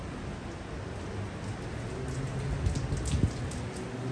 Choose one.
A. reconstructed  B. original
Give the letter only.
B